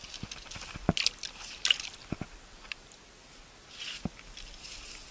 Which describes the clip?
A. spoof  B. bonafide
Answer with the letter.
B